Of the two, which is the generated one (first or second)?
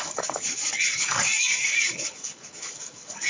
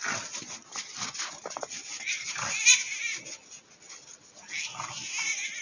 first